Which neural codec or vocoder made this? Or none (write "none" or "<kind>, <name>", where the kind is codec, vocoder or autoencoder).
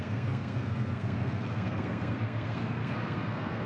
codec, SNAC